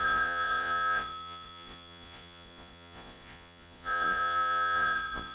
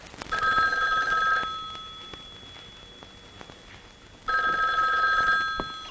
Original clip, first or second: second